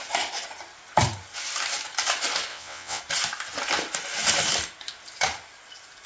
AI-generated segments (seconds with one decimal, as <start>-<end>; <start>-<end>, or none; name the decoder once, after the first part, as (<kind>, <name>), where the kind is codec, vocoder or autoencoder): 2.5-3.0 (vocoder, WaveNeXt)